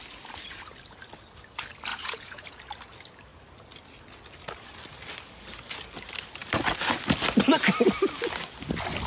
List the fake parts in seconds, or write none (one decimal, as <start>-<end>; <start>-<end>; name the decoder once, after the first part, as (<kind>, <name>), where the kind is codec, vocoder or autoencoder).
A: 1.9-2.6 (vocoder, Vocos)